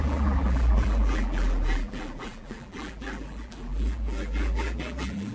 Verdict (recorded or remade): remade